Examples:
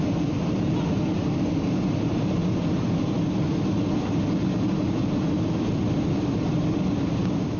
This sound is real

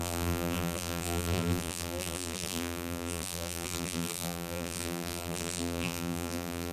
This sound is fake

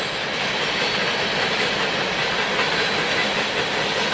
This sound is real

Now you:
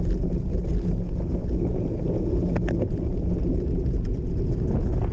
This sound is real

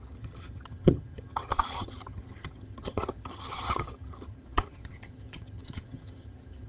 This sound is fake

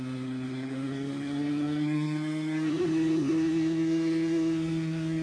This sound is fake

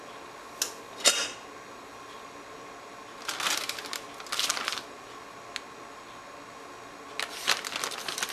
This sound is real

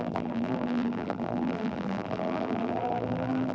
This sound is fake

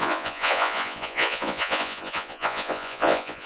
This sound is fake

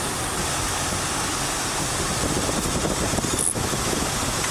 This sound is real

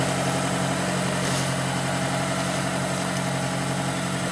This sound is real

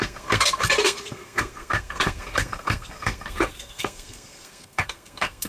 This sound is fake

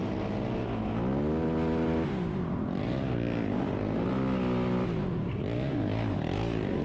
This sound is real